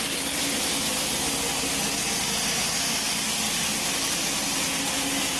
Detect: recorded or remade recorded